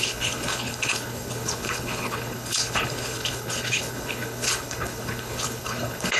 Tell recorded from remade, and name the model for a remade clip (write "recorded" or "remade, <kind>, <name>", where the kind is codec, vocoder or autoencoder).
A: remade, codec, HILCodec